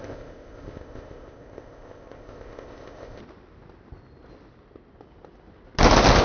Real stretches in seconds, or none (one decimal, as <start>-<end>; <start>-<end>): 3.2-6.2